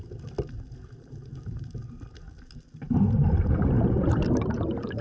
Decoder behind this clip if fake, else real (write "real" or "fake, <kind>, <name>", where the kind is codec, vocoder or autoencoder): real